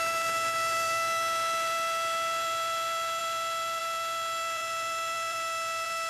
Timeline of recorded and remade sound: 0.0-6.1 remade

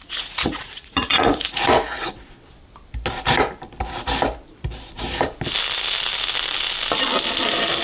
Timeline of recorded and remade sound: 0.0-2.1 remade; 2.1-7.8 recorded